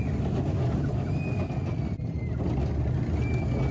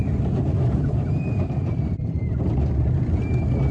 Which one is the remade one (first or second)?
second